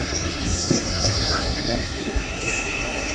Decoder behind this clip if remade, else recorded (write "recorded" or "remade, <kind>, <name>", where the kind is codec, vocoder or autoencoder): remade, codec, SNAC